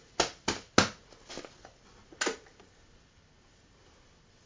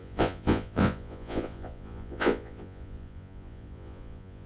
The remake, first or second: second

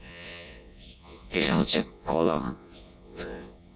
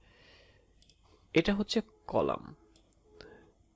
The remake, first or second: first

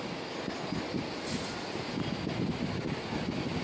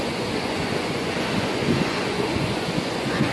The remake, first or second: second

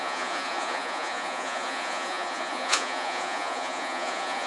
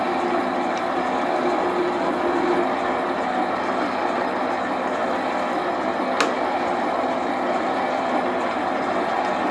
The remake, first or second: first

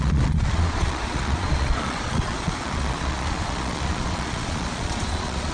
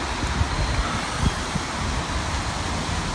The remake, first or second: first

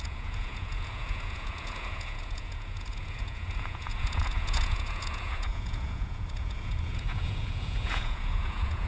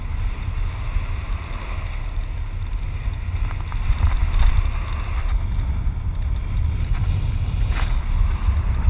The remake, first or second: first